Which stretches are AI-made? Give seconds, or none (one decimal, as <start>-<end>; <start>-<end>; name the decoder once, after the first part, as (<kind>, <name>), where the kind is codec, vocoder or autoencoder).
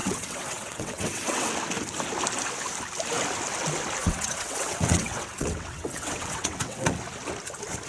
0.0-1.5 (vocoder, WaveNeXt); 4.0-6.9